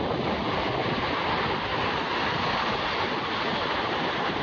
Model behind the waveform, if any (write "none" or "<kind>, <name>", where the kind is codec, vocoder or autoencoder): none